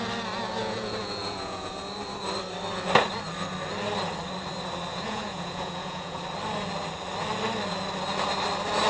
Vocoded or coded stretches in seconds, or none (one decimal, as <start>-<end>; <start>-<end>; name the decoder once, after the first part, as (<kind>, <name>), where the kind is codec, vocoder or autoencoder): 0.6-1.7 (vocoder, Vocos); 4.9-6.2